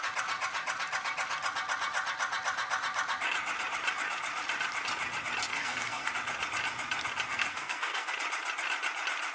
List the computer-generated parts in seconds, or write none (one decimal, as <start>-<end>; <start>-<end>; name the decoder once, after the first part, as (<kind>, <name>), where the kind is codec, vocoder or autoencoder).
5.5-6.1 (codec, SNAC); 7.3-8.1